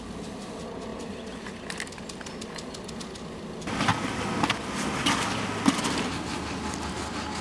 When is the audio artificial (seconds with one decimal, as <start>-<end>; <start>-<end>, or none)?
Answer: none